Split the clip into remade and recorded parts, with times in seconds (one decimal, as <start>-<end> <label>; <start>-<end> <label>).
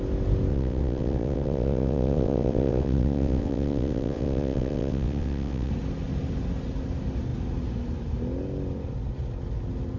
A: 0.0-0.5 recorded; 0.5-5.7 remade; 5.7-10.0 recorded